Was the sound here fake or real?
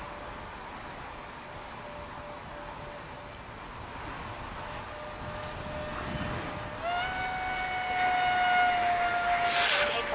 real